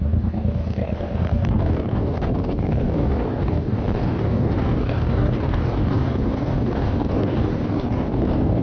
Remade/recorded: remade